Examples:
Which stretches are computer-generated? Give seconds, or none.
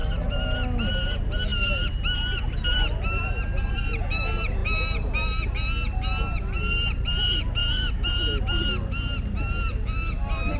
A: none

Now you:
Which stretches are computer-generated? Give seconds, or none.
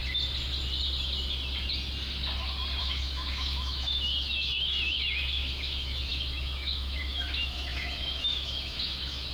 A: 2.8-9.3 (autoencoder, DAC-VAE)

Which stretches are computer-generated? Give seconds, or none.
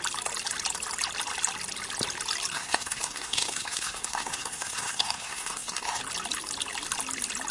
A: 2.5-6.0 (codec, SNAC)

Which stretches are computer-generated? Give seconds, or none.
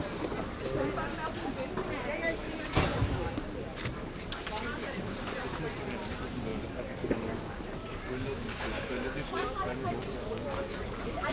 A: 2.9-5.3 (codec, DAC); 6.5-11.3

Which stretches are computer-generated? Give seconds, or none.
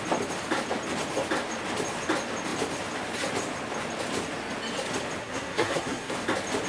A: 5.2-6.1 (codec, SNAC)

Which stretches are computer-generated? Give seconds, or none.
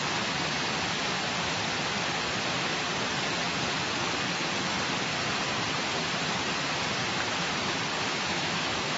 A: 8.1-9.0 (autoencoder, DAC-VAE)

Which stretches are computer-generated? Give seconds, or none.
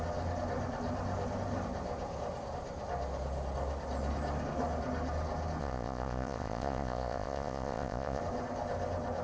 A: 5.6-8.2 (vocoder, Vocos)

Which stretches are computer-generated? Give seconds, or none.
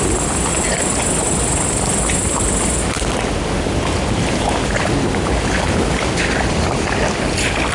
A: none